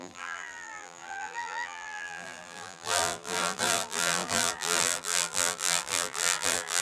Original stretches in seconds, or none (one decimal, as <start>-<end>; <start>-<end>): none